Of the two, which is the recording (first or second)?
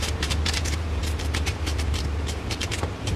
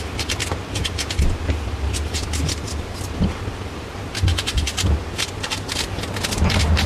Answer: second